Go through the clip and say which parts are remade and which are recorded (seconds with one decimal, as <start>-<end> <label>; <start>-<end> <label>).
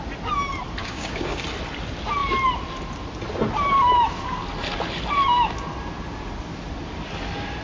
0.0-0.8 recorded; 0.8-1.4 remade; 1.4-7.6 recorded